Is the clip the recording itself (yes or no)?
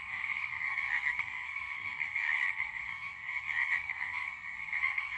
no